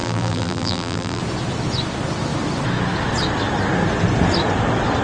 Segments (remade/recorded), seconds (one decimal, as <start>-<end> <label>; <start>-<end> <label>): 0.0-1.2 remade; 1.2-5.0 recorded